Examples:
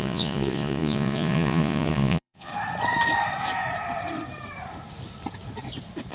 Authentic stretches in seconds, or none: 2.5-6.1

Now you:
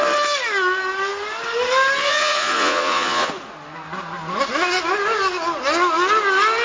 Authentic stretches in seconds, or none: 0.0-2.0; 3.3-6.6

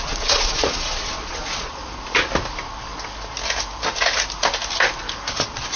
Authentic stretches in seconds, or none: 1.8-5.3

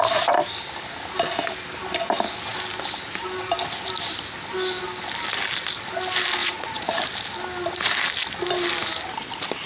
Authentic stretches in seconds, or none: 0.0-6.4; 7.0-9.7